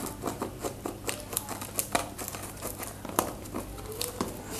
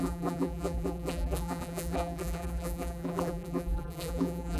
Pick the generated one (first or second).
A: second